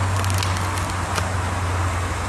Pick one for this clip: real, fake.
real